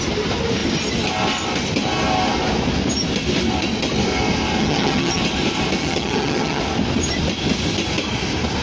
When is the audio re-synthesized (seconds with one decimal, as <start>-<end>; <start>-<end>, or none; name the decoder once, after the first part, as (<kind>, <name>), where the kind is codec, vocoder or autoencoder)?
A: 4.6-5.2 (vocoder, HiFi-GAN); 5.8-6.6